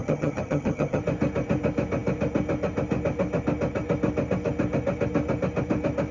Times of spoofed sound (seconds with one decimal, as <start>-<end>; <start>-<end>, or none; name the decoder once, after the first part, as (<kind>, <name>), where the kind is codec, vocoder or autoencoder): 0.0-1.0 (vocoder, HiFi-GAN)